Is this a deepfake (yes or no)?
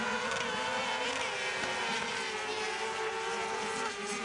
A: no